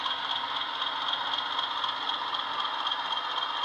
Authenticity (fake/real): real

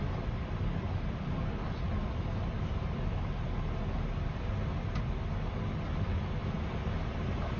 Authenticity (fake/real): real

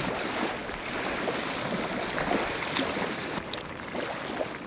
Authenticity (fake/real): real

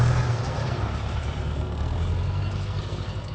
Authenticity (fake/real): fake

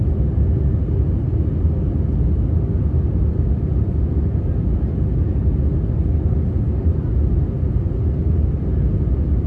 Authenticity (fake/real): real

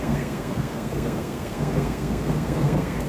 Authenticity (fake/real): fake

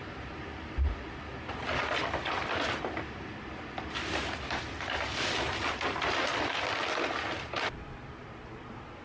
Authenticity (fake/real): real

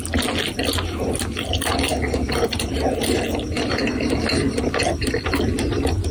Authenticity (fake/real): real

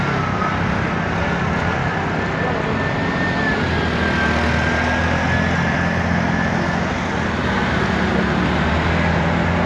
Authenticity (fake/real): real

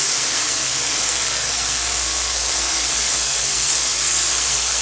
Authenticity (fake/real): fake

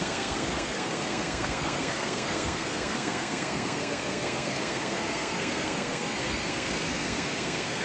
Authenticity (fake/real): fake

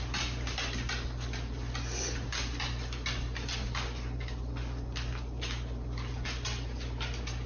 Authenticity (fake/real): real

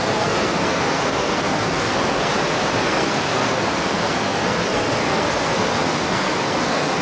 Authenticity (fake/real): fake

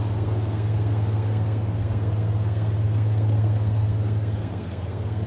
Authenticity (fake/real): fake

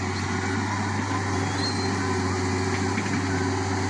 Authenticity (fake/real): real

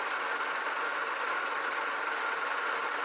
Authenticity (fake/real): real